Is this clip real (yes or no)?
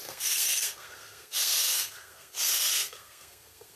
no